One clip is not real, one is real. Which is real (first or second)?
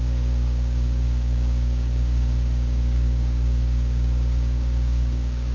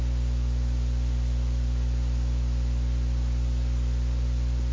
second